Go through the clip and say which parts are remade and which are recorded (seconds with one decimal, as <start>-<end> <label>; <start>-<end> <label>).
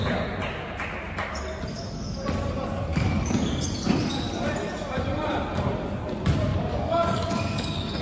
0.0-1.7 recorded; 1.7-2.2 remade; 2.2-2.9 recorded; 2.9-3.5 remade; 3.5-6.5 recorded; 6.5-8.0 remade